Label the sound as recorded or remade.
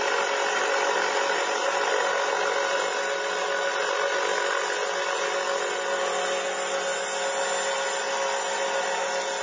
recorded